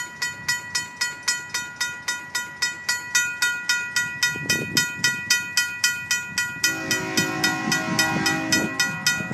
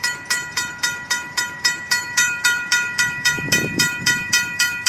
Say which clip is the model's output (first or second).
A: second